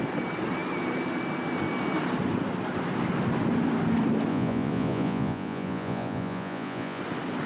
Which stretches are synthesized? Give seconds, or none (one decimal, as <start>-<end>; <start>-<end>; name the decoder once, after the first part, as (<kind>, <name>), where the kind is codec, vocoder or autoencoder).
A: 4.3-7.0 (vocoder, Vocos)